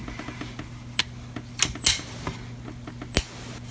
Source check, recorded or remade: recorded